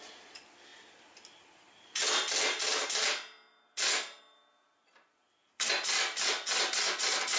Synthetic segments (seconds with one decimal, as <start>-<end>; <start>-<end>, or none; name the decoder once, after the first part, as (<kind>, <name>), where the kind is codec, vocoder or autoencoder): none